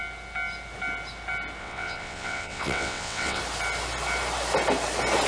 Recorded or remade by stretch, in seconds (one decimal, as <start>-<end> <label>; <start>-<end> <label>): 0.0-1.6 recorded; 1.6-3.4 remade; 3.4-5.3 recorded